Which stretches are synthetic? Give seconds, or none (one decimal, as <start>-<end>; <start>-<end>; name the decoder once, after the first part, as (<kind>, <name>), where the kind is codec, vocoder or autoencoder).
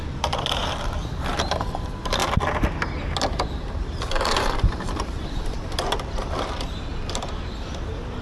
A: 0.0-2.2 (vocoder, BigVGAN v2); 3.3-8.2